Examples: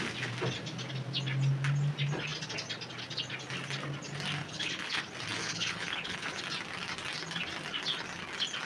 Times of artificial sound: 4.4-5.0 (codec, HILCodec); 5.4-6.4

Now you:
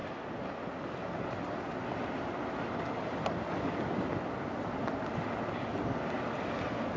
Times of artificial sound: none